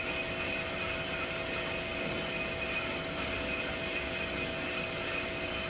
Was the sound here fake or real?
real